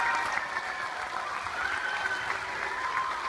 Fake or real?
real